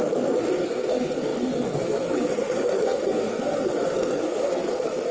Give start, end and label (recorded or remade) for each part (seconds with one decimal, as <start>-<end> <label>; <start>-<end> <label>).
0.0-5.1 remade